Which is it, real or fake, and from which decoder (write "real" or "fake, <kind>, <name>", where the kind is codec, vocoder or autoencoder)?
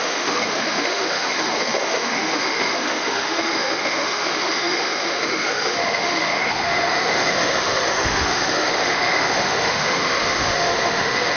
fake, autoencoder, DAC-VAE